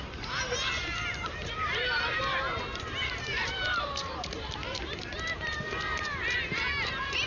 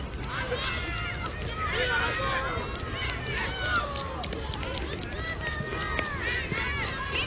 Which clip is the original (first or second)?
second